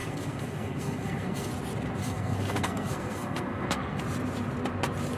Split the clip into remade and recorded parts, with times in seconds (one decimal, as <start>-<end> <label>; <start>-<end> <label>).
0.0-1.5 remade; 1.5-2.0 recorded; 2.0-4.0 remade; 4.0-5.2 recorded

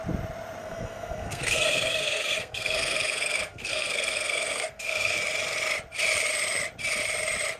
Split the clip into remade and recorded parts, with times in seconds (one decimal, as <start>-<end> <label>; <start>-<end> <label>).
0.0-0.6 recorded; 0.6-5.2 remade; 5.2-7.6 recorded

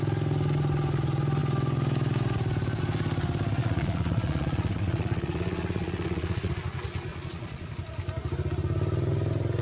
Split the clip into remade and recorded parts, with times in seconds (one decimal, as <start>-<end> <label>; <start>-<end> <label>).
0.0-3.6 recorded; 3.6-6.5 remade; 6.5-7.1 recorded; 7.1-7.7 remade; 7.7-9.6 recorded